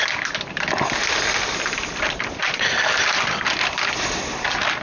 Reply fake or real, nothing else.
fake